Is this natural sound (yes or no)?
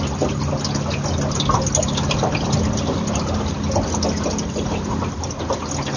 yes